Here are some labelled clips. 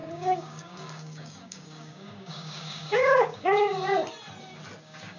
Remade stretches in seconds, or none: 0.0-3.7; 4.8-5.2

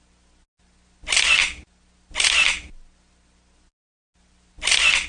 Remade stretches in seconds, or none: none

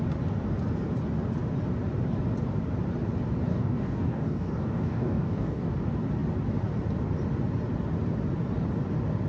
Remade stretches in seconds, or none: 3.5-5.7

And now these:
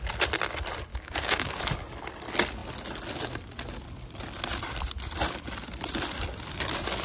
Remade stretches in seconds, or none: 0.9-1.6

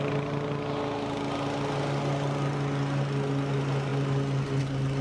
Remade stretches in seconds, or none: none

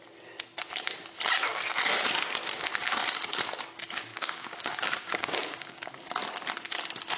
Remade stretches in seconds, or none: 4.1-5.9